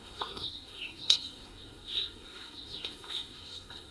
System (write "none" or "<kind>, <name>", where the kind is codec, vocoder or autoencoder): codec, SNAC